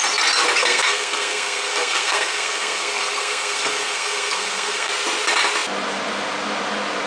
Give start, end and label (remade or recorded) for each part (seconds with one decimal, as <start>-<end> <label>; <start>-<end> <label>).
0.0-0.6 recorded; 0.6-4.9 remade; 4.9-7.1 recorded

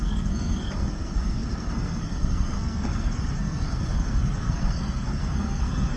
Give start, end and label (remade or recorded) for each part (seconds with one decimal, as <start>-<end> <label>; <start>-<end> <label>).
0.0-6.0 remade

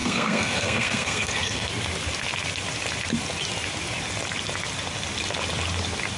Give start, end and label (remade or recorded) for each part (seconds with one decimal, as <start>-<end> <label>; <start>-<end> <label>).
0.0-1.7 remade; 1.7-6.2 recorded

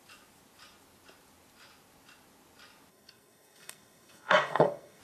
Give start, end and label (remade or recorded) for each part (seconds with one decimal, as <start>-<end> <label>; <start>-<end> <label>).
0.0-2.9 recorded; 2.9-5.0 remade

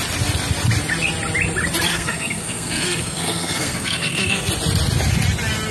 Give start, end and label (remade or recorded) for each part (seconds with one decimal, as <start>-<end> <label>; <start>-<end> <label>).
0.0-1.9 recorded; 1.9-4.5 remade; 4.5-5.7 recorded

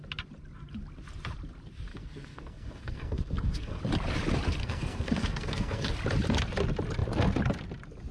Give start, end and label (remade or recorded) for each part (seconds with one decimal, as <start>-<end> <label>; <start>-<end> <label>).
0.0-1.9 recorded; 1.9-3.8 remade; 3.8-4.6 recorded; 4.6-5.9 remade; 5.9-8.1 recorded

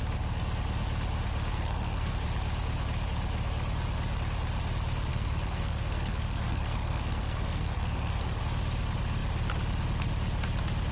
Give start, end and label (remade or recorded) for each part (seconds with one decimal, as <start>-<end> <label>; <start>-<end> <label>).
0.0-1.5 recorded; 1.5-2.2 remade; 2.2-5.1 recorded; 5.1-8.4 remade; 8.4-10.9 recorded

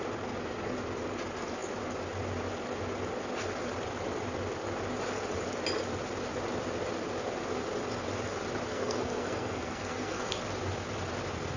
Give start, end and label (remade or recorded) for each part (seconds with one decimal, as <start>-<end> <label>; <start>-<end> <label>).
0.0-8.7 recorded; 8.7-10.4 remade; 10.4-11.6 recorded